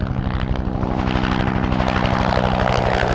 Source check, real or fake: real